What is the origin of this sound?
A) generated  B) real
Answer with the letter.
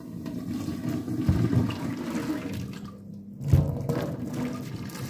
B